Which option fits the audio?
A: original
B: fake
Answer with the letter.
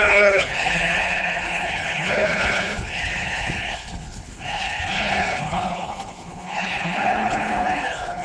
B